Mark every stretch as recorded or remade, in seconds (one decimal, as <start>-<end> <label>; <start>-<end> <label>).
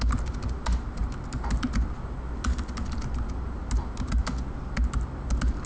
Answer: 0.0-5.7 recorded